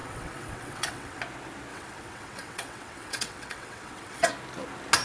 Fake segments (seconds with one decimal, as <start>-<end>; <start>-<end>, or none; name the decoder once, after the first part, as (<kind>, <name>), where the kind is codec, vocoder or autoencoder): 0.0-1.2 (vocoder, WaveNeXt); 1.7-4.3